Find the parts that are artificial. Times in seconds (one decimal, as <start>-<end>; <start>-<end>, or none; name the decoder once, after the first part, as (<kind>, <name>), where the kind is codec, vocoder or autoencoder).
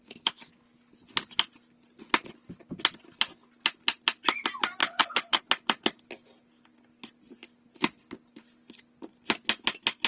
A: 4.8-5.4 (codec, HILCodec)